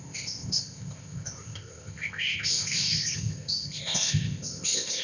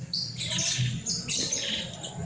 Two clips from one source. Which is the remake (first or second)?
first